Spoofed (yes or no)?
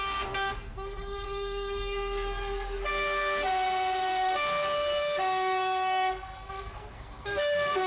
yes